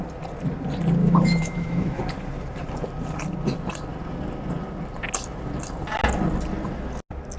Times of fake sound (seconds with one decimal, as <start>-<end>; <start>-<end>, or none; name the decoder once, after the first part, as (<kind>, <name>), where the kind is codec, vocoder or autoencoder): 1.0-2.0 (autoencoder, DAC-VAE)